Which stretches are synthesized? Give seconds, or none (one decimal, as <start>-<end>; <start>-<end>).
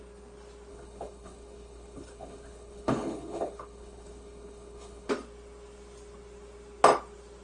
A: 0.7-5.1